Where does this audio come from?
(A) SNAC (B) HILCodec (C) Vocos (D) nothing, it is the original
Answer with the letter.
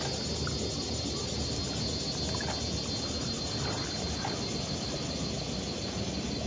D